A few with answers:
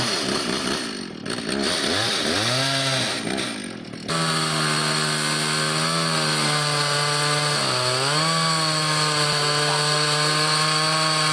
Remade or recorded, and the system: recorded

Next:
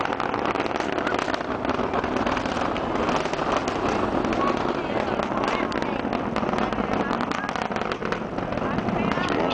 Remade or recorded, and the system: recorded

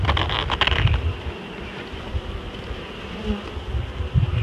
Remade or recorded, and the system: recorded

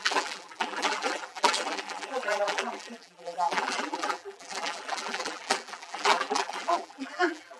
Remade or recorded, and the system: remade, vocoder, BigVGAN v2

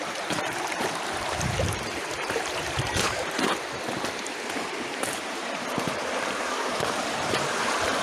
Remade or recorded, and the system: remade, vocoder, BigVGAN v2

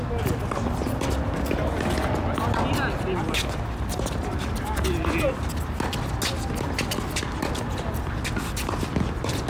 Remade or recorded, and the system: recorded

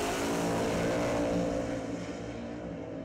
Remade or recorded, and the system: recorded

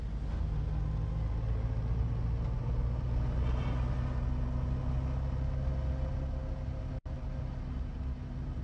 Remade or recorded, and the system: recorded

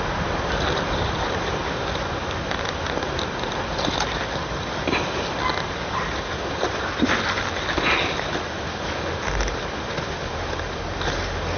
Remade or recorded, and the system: recorded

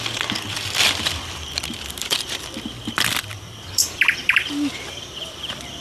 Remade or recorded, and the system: remade, vocoder, BigVGAN v2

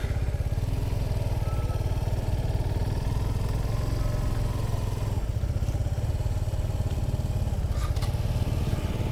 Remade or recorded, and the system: recorded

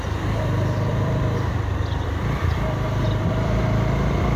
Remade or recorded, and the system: remade, vocoder, BigVGAN v2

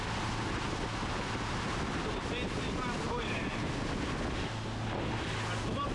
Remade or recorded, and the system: recorded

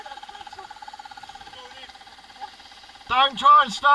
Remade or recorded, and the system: recorded